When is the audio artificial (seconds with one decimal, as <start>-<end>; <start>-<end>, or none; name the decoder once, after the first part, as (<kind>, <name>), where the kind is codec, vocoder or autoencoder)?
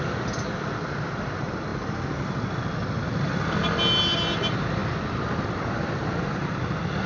none